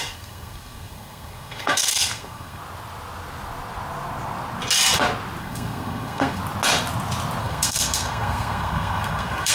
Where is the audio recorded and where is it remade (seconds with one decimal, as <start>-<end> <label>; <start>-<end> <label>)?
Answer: 0.0-2.6 remade; 2.6-5.4 recorded; 5.4-6.4 remade; 6.4-7.4 recorded; 7.4-9.5 remade